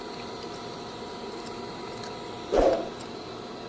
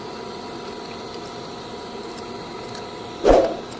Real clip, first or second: first